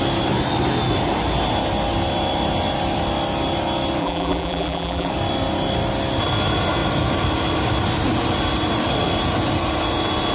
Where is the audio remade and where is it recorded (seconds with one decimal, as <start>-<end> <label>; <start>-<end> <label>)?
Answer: 0.0-4.0 recorded; 4.0-5.1 remade; 5.1-10.3 recorded